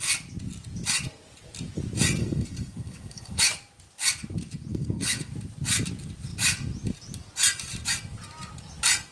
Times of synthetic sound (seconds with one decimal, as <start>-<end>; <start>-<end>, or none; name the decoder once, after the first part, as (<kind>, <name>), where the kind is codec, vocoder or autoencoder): 2.2-3.4 (codec, SNAC); 4.7-5.3